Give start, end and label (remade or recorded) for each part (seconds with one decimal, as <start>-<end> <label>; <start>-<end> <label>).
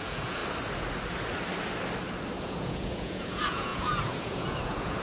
0.0-0.4 remade; 0.4-2.4 recorded; 2.4-5.0 remade